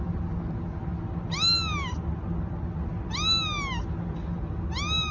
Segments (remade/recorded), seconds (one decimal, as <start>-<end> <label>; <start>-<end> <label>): 0.0-5.1 recorded